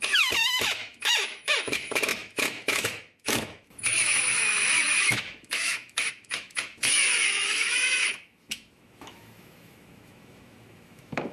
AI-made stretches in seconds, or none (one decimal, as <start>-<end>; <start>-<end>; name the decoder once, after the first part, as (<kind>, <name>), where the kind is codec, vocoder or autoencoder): 0.0-11.3 (autoencoder, DAC-VAE)